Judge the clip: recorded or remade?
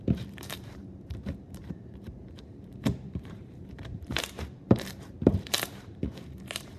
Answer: remade